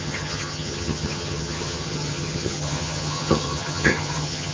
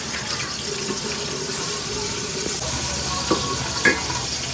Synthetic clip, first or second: first